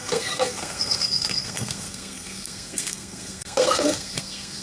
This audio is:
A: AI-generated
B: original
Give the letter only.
A